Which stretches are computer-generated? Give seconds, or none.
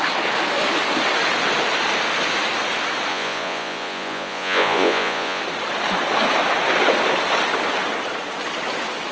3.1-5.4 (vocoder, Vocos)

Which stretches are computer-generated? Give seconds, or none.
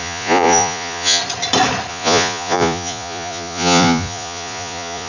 0.0-1.2 (vocoder, Vocos); 1.9-5.1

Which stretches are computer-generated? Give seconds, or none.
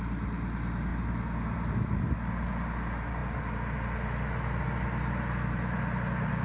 none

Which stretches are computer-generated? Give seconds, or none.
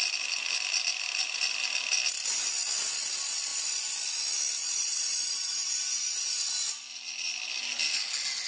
4.6-5.7 (vocoder, Vocos)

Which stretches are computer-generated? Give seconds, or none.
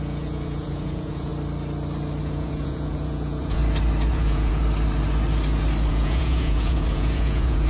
0.0-1.3 (vocoder, Vocos); 2.2-3.6; 4.1-4.6; 5.9-7.7